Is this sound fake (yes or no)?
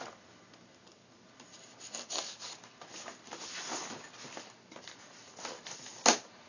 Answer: no